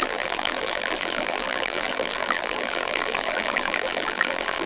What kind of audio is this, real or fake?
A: fake